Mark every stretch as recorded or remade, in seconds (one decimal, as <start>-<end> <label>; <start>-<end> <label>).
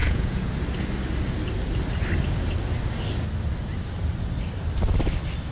0.0-0.5 remade; 0.5-5.5 recorded